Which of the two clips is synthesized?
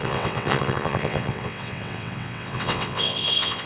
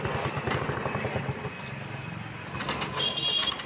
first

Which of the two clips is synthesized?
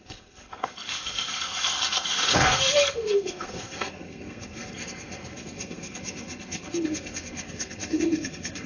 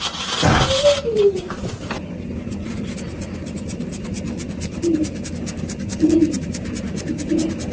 first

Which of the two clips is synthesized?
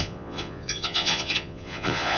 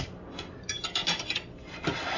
first